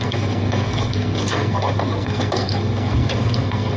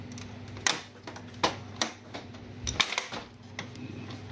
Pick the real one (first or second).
second